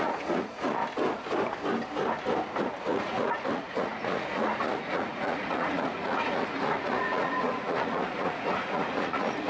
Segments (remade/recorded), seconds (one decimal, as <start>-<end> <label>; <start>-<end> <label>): 0.0-0.8 remade; 0.8-2.6 recorded; 2.6-9.5 remade